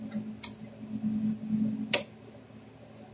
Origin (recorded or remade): recorded